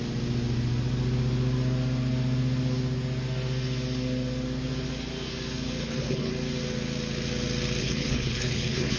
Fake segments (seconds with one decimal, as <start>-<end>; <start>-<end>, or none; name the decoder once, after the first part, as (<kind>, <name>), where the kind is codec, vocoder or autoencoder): 5.8-6.3 (codec, HILCodec); 7.8-9.0